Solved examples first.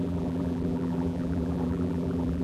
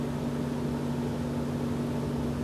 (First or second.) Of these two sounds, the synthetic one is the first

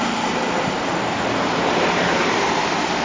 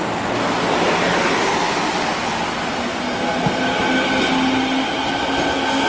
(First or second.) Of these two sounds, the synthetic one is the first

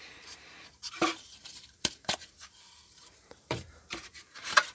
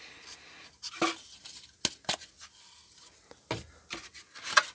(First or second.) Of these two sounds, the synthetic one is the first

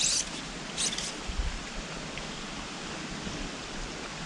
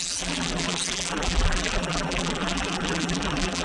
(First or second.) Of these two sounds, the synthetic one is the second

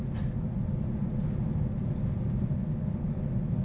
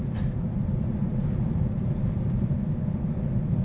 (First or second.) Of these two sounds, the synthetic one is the second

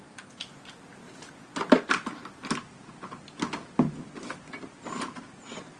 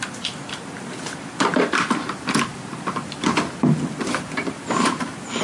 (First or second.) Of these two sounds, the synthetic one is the second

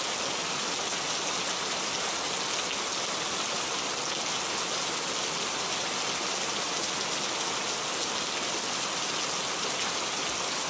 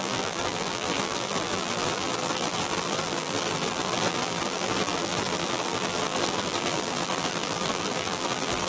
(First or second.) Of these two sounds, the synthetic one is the second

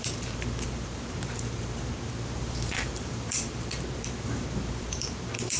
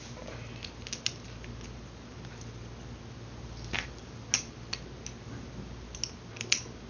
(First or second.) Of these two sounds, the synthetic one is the first